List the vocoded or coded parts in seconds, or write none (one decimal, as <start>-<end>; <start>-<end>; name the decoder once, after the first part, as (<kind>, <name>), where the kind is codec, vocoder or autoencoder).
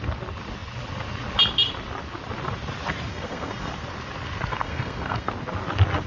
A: 3.1-3.7 (codec, SNAC); 4.5-5.3